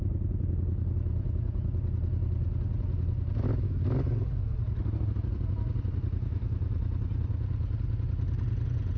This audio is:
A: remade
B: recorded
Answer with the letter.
B